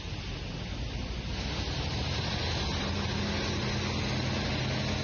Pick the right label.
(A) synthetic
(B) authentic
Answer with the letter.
B